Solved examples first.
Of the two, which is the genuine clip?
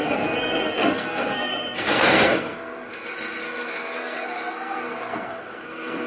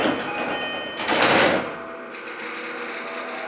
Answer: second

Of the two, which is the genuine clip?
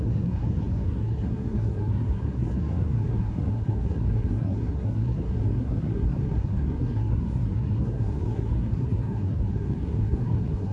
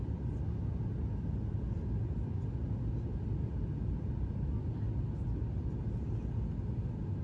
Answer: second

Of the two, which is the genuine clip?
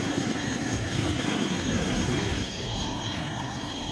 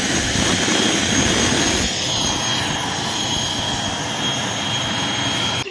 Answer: second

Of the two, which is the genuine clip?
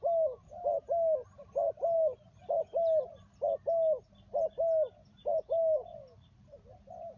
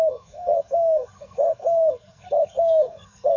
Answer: first